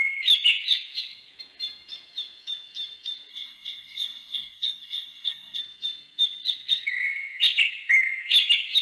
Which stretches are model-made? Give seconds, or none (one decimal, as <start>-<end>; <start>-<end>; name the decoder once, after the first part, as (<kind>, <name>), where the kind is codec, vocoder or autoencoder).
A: 3.3-5.6 (codec, SNAC)